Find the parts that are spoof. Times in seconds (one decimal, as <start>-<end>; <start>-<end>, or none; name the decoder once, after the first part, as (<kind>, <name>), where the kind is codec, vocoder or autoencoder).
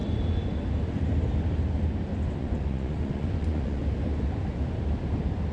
2.4-3.8 (vocoder, Vocos)